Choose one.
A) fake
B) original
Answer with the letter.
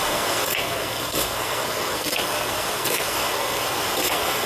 A